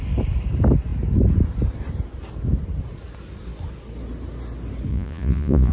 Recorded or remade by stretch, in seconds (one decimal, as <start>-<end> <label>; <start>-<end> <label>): 0.0-4.9 recorded; 4.9-5.7 remade